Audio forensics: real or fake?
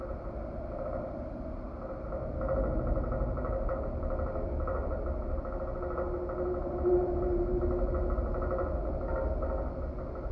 real